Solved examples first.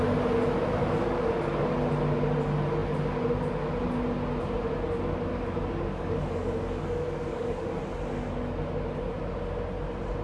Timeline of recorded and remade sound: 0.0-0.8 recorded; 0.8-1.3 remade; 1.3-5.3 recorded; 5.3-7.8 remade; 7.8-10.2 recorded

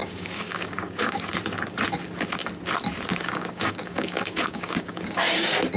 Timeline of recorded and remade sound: 0.0-1.3 remade; 1.3-3.1 recorded; 3.1-5.2 remade; 5.2-5.8 recorded

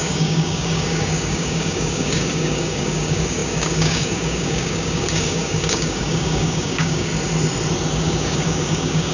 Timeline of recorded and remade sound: 0.0-7.1 remade; 7.1-7.9 recorded; 7.9-9.1 remade

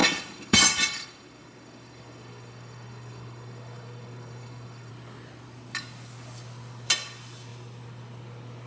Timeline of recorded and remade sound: 0.0-4.9 remade; 4.9-8.7 recorded

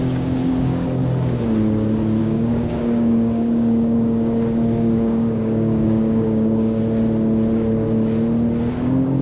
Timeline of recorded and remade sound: 0.0-1.0 remade; 1.0-2.2 recorded; 2.2-6.8 remade; 6.8-8.7 recorded; 8.7-9.2 remade